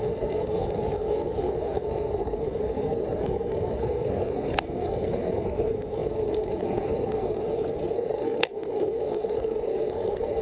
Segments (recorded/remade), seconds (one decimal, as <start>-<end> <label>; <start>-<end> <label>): 0.0-10.4 remade